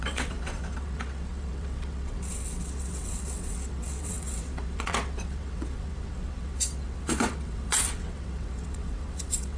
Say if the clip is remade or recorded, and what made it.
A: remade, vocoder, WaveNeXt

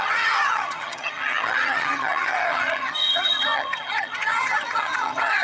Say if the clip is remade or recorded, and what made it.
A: remade, vocoder, HiFi-GAN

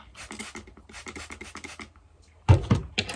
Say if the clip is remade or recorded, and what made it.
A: recorded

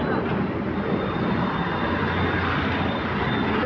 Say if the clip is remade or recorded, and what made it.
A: recorded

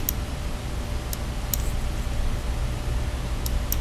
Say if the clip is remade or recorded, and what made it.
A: recorded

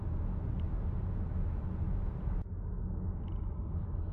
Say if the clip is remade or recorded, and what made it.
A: recorded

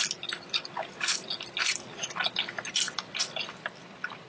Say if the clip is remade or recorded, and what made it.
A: recorded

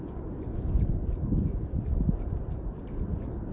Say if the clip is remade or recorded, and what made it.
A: recorded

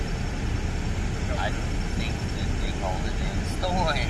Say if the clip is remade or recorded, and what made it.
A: recorded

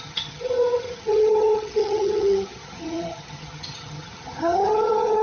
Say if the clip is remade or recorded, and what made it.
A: remade, vocoder, HiFi-GAN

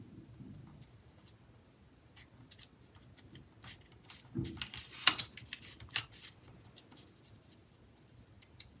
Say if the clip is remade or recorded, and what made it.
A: recorded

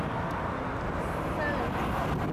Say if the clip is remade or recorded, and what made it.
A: recorded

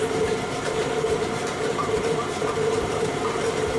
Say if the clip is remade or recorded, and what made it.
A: remade, vocoder, BigVGAN v2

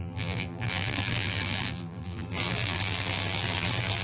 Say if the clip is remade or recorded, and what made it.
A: remade, vocoder, BigVGAN v2